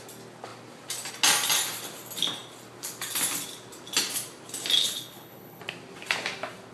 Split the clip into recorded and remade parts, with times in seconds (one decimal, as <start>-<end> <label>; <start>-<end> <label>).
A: 0.0-4.8 recorded; 4.8-5.6 remade; 5.6-6.7 recorded